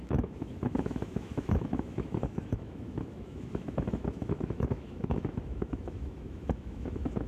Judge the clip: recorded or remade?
remade